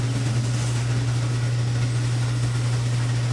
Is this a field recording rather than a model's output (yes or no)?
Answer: yes